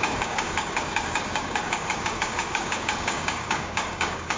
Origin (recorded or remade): remade